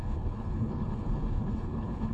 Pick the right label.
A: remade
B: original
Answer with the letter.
A